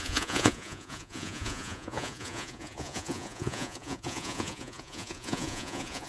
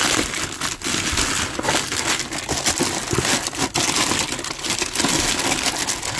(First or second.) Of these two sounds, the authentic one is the second